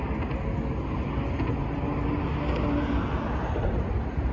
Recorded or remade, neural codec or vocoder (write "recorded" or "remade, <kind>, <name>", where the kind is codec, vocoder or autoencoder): recorded